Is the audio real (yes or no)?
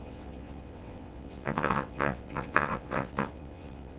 no